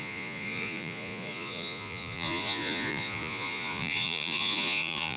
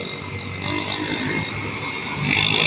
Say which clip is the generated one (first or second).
first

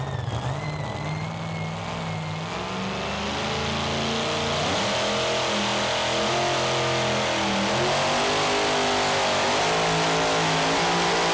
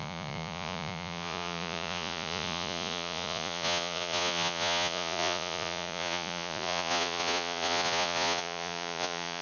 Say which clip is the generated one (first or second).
second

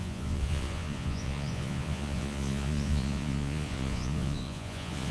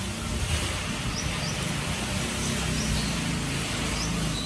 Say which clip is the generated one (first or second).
first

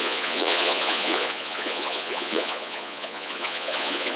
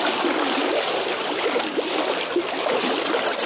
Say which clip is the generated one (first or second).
first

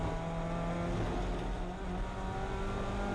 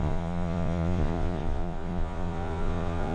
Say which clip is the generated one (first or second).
second